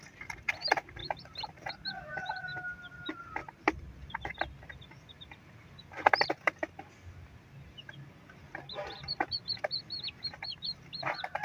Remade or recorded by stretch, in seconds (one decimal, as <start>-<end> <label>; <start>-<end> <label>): 0.0-1.0 recorded; 1.0-1.7 remade; 1.7-3.4 recorded; 3.4-4.1 remade; 4.1-11.4 recorded